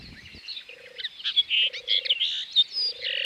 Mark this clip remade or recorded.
recorded